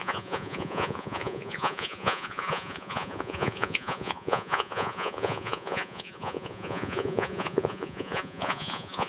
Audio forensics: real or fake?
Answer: fake